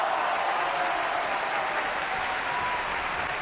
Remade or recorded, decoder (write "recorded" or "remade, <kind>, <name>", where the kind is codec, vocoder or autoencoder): recorded